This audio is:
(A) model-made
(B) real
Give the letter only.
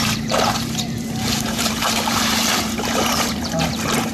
A